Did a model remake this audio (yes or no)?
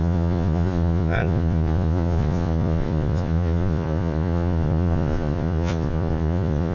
yes